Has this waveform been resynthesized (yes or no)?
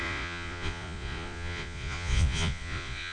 yes